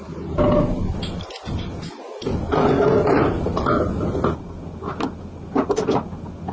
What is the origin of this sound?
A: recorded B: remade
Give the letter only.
A